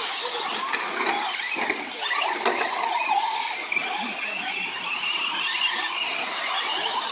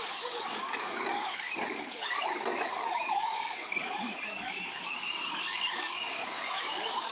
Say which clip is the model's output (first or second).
second